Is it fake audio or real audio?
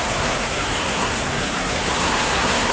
fake